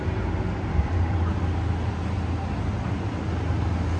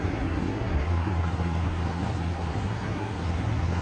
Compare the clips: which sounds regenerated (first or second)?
second